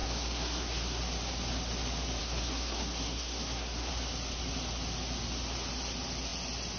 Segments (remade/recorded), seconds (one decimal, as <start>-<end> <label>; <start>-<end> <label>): 0.0-1.0 remade; 1.0-2.2 recorded; 2.2-3.9 remade; 3.9-6.8 recorded